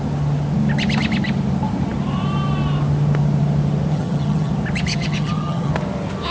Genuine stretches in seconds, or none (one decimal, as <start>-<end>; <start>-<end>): 0.0-3.9; 4.5-4.9; 5.7-6.3